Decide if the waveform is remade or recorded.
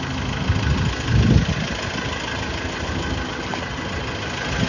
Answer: recorded